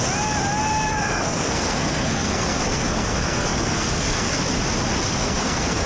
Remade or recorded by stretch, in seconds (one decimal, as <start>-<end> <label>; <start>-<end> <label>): 0.0-0.9 recorded; 0.9-4.4 remade; 4.4-5.2 recorded; 5.2-5.9 remade